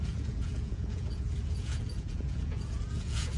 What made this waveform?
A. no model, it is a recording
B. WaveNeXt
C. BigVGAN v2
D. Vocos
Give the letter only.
D